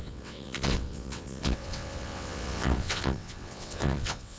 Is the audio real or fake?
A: fake